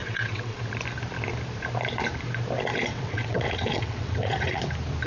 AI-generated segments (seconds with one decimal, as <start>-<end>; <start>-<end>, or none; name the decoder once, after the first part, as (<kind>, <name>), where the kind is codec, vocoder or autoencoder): 0.0-0.6 (vocoder, WaveNeXt); 2.9-4.6

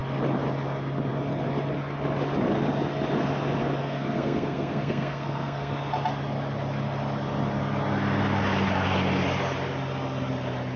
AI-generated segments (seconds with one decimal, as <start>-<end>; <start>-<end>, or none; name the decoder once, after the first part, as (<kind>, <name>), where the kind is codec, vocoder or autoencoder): 3.8-5.7 (codec, SNAC)

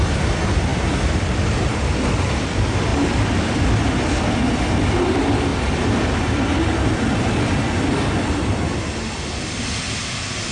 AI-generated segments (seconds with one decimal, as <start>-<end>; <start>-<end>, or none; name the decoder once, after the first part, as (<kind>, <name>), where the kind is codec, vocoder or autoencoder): 0.0-5.5 (vocoder, BigVGAN v2)

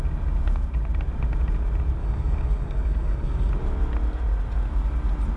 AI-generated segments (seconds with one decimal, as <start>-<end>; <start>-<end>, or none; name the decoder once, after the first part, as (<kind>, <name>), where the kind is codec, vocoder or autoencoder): 2.0-3.5 (codec, DAC)

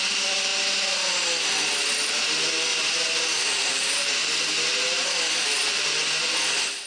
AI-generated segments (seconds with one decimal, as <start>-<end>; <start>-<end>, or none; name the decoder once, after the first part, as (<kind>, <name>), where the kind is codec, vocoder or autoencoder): 2.7-4.5 (vocoder, BigVGAN v2)

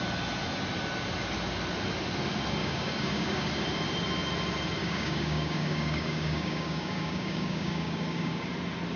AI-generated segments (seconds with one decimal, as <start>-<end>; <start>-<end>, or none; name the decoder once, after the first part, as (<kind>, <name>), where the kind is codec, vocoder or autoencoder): 2.6-3.5 (codec, DAC); 4.8-8.5

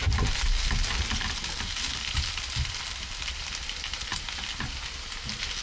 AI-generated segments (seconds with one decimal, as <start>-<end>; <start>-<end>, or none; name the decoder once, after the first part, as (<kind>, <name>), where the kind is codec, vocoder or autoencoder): none